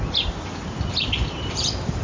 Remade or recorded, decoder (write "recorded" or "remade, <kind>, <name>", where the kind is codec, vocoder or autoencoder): recorded